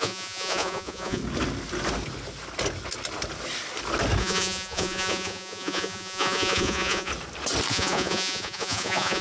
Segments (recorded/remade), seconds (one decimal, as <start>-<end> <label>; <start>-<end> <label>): 0.0-1.2 remade; 1.2-4.2 recorded; 4.2-7.1 remade; 7.1-7.7 recorded; 7.7-9.2 remade